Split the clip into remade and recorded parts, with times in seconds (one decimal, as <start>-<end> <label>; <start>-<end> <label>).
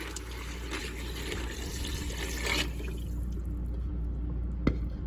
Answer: 0.0-5.1 recorded